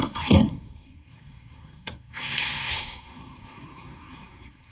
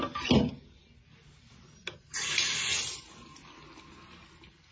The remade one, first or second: first